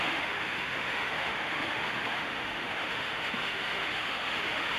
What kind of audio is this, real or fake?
fake